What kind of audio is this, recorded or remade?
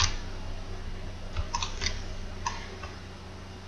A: recorded